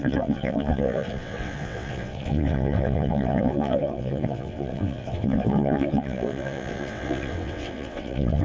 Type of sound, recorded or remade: remade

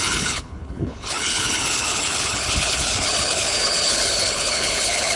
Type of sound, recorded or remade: remade